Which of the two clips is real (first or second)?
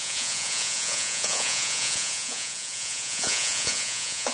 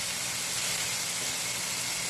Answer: second